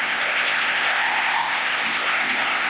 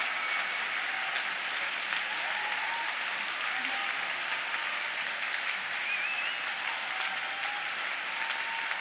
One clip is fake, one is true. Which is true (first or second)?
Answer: second